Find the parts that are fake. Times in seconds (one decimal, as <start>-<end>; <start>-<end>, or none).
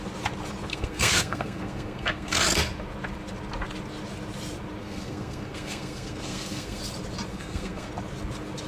0.7-2.4; 4.8-6.8; 7.3-7.9